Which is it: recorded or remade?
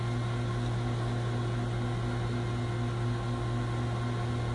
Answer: recorded